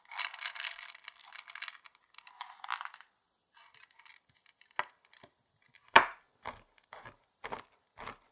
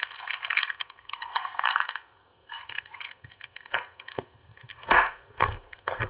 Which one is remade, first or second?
second